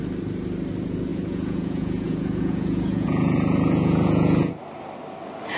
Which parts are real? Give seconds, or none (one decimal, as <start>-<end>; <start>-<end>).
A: 0.0-1.1; 4.5-5.6